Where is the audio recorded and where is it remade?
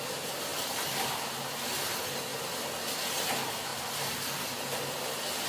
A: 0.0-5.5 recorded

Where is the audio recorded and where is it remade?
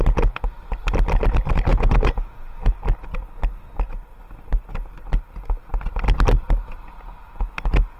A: 0.0-1.7 recorded; 1.7-2.7 remade; 2.7-8.0 recorded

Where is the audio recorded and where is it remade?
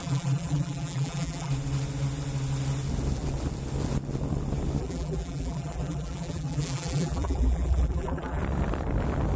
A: 0.0-1.5 remade; 1.5-4.8 recorded; 4.8-8.4 remade; 8.4-9.4 recorded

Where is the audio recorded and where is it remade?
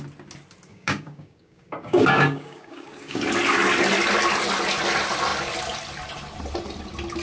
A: 0.0-0.7 recorded; 0.7-3.2 remade; 3.2-7.2 recorded